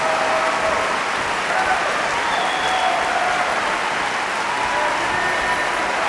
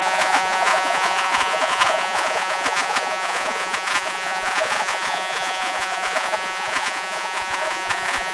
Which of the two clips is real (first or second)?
first